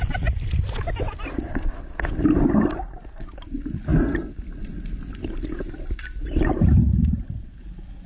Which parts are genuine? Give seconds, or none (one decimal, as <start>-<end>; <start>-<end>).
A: 0.0-8.1